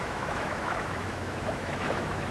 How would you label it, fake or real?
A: fake